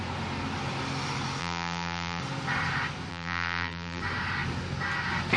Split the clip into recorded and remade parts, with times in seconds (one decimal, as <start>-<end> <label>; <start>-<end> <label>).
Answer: 0.0-1.4 recorded; 1.4-2.2 remade; 2.2-3.1 recorded; 3.1-4.0 remade; 4.0-5.4 recorded